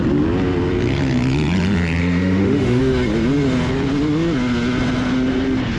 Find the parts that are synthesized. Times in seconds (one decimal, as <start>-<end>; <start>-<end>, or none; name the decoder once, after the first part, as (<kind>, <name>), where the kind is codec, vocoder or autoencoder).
2.0-2.8 (autoencoder, DAC-VAE)